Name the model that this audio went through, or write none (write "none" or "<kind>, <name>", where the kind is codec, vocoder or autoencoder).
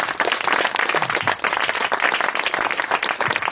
none